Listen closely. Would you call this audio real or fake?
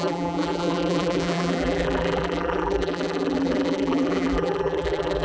fake